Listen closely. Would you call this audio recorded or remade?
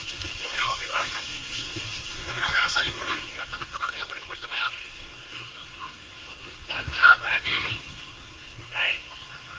remade